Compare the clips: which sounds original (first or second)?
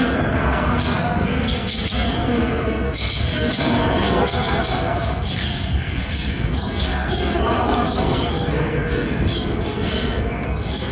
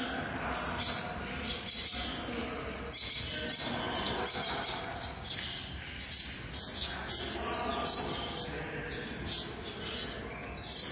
second